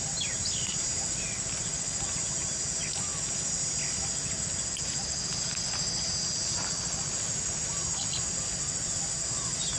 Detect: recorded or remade recorded